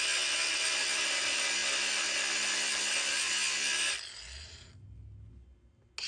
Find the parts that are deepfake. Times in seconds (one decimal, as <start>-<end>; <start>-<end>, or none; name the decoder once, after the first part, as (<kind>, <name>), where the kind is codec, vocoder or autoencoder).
none